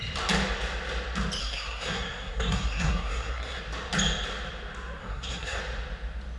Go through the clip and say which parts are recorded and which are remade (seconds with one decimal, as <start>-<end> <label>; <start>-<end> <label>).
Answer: 0.0-1.4 recorded; 1.4-3.6 remade; 3.6-5.0 recorded; 5.0-5.6 remade; 5.6-6.4 recorded